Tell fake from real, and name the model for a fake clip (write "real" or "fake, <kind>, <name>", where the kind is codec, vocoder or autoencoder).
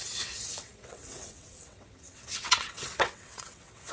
fake, vocoder, WaveNeXt